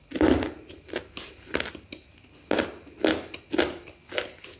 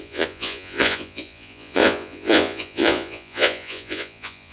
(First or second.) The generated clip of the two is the second